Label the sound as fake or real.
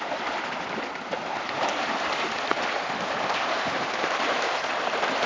real